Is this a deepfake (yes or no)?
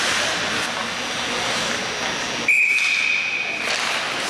no